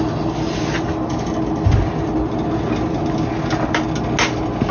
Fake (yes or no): no